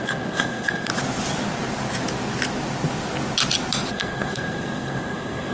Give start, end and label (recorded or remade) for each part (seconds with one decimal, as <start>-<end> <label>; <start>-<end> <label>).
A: 0.0-0.9 remade; 0.9-3.9 recorded; 3.9-5.5 remade